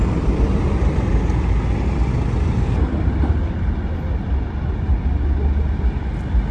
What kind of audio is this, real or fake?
real